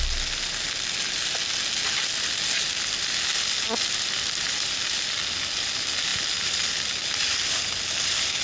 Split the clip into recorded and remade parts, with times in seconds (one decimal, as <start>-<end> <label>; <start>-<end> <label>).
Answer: 0.0-8.4 recorded